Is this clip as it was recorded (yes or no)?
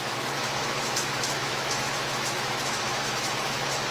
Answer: no